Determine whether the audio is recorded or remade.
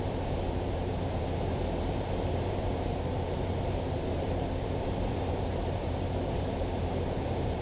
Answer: remade